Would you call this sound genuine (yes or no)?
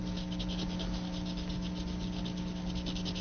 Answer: yes